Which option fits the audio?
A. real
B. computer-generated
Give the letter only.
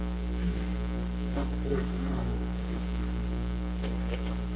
B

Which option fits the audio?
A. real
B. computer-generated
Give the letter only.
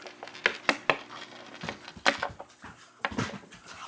A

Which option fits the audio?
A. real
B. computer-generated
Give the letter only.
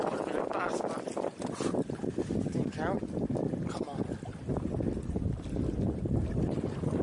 A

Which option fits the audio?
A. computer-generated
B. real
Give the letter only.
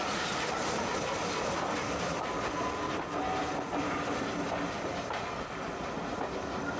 B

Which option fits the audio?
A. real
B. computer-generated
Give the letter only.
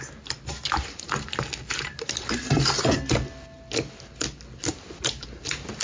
A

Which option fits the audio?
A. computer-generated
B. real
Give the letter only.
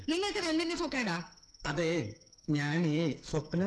A